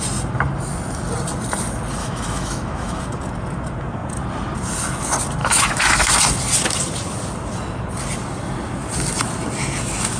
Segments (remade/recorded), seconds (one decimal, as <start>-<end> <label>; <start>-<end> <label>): 0.0-2.0 recorded; 2.0-3.0 remade; 3.0-5.4 recorded; 5.4-6.1 remade; 6.1-10.2 recorded